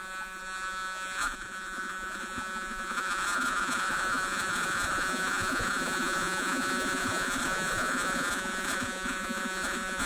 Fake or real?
fake